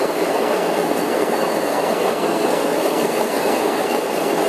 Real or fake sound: fake